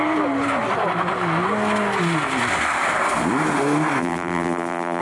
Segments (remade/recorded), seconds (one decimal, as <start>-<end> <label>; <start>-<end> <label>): 0.0-4.0 recorded; 4.0-5.0 remade